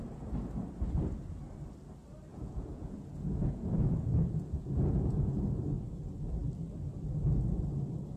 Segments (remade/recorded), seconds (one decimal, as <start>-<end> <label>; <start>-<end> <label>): 0.0-2.3 recorded; 2.3-5.4 remade; 5.4-8.2 recorded

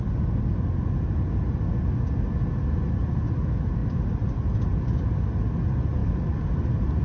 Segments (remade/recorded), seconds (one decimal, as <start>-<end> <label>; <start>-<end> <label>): 0.0-3.8 recorded; 3.8-5.2 remade; 5.2-6.0 recorded; 6.0-6.6 remade; 6.6-7.0 recorded

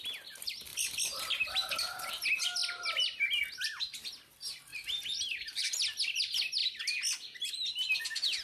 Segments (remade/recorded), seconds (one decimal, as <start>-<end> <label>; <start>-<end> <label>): 0.0-0.7 recorded; 0.7-2.1 remade; 2.1-8.4 recorded

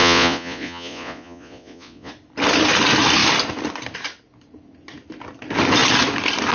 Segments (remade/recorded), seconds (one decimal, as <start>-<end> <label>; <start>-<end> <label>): 0.0-2.1 remade; 2.1-6.5 recorded

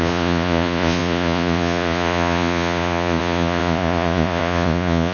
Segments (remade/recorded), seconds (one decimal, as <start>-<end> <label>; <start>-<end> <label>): 0.0-5.1 remade